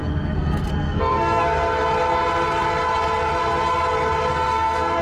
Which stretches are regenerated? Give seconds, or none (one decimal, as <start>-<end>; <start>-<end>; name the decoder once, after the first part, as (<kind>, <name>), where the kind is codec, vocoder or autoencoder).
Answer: 0.0-1.8 (codec, SNAC); 4.3-5.0